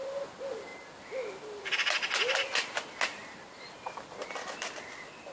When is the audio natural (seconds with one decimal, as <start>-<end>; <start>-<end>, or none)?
0.0-5.3